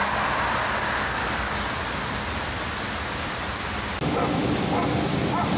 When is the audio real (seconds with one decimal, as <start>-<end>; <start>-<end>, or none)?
0.0-5.6